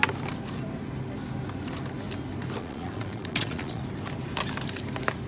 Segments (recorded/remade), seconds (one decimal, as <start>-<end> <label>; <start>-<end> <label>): 0.0-2.6 recorded; 2.6-3.8 remade; 3.8-5.3 recorded